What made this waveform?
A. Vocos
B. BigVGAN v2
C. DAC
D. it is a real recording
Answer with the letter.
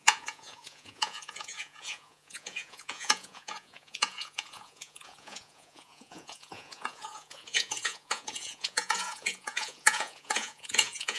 A